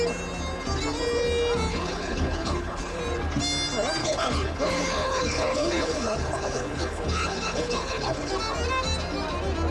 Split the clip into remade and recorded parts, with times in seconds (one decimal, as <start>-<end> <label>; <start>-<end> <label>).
0.0-1.7 recorded; 1.7-3.0 remade; 3.0-4.0 recorded; 4.0-8.3 remade; 8.3-9.7 recorded